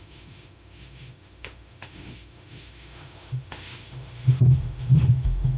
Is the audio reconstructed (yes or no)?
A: yes